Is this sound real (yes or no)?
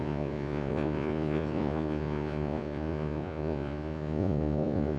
no